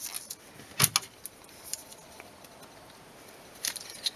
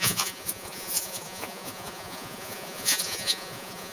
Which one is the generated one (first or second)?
second